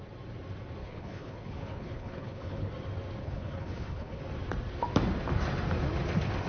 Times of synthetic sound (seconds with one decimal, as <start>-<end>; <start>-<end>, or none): 0.8-2.7; 3.2-4.2